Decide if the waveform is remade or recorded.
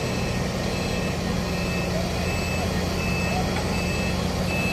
recorded